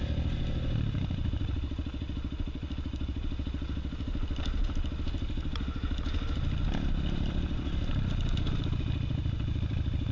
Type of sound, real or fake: real